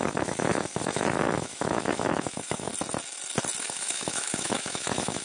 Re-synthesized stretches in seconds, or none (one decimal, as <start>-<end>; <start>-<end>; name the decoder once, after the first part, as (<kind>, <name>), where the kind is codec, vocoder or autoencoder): 0.0-2.7 (autoencoder, DAC-VAE); 3.6-5.2